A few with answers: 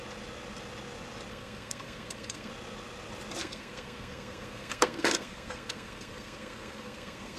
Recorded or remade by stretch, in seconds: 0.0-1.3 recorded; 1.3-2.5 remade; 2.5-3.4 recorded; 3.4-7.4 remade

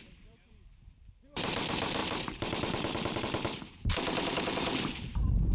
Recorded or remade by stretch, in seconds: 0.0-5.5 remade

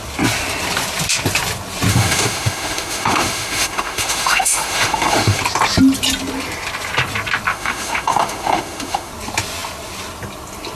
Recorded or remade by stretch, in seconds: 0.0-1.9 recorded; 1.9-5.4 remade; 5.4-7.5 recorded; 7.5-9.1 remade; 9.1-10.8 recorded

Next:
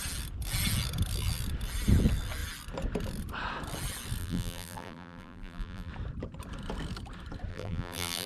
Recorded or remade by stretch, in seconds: 0.0-4.2 recorded; 4.2-5.9 remade; 5.9-7.5 recorded; 7.5-8.3 remade

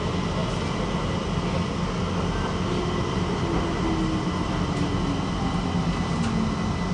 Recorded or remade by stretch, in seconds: 0.0-6.9 recorded

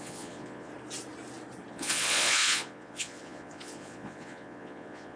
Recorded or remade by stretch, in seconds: 0.0-0.7 remade; 0.7-1.7 recorded; 1.7-5.2 remade